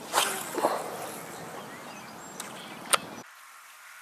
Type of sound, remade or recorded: recorded